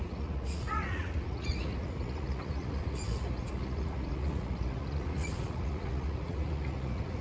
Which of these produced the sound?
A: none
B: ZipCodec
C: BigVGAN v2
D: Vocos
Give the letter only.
D